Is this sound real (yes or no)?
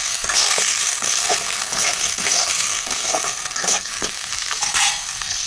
no